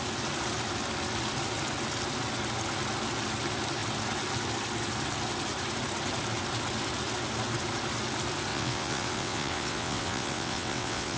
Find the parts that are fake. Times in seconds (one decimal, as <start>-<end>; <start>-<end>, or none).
8.5-11.2